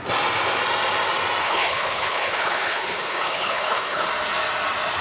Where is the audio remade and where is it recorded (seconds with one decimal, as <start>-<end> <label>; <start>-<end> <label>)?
0.0-1.4 recorded; 1.4-4.1 remade; 4.1-5.0 recorded